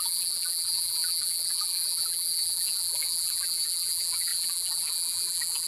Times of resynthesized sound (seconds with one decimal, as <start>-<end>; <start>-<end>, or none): 0.0-5.7